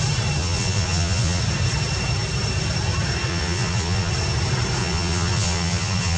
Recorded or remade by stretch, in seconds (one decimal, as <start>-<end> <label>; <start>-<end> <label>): 0.0-0.4 recorded; 0.4-1.4 remade; 1.4-3.3 recorded; 3.3-4.1 remade; 4.1-4.8 recorded; 4.8-6.2 remade